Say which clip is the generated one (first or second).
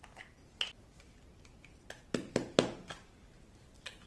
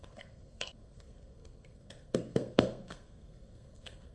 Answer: second